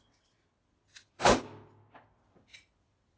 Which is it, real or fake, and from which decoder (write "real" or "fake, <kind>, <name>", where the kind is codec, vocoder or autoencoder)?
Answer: real